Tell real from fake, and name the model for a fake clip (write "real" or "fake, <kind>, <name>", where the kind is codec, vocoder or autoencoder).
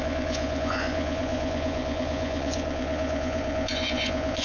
fake, vocoder, Vocos